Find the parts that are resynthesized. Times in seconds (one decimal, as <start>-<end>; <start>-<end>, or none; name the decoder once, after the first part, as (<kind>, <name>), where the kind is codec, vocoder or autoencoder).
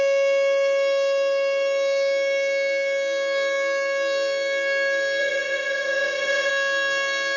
5.2-6.5 (vocoder, Vocos)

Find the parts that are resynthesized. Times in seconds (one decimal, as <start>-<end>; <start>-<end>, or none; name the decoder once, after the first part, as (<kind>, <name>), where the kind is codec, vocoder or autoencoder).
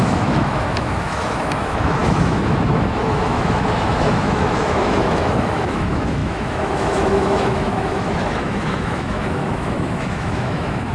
0.0-10.9 (autoencoder, DAC-VAE)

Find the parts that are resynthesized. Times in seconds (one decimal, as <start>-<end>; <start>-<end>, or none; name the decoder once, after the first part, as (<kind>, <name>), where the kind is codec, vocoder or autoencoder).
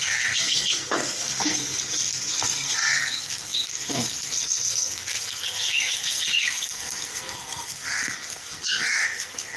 0.0-9.6 (codec, SNAC)